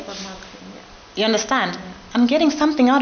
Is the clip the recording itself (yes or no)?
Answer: yes